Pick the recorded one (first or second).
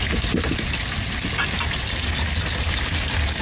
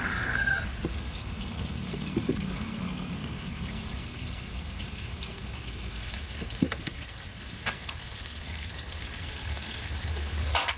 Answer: first